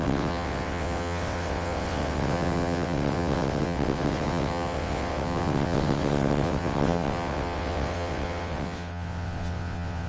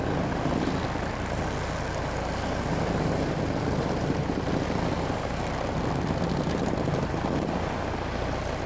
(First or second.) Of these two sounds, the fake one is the first